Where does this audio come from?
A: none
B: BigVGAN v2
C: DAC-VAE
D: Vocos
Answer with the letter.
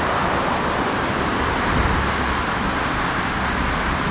A